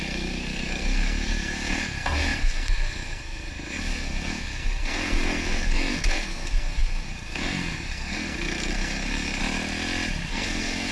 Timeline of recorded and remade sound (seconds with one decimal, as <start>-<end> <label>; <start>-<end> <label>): 0.0-9.4 remade; 9.4-10.3 recorded; 10.3-10.9 remade